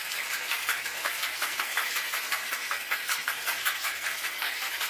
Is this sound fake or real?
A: fake